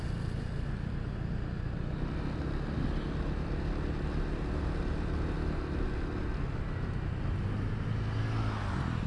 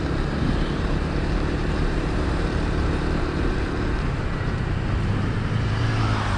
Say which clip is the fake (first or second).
second